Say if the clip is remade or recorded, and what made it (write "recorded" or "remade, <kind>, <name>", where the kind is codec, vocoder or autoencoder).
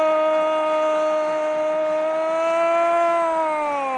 recorded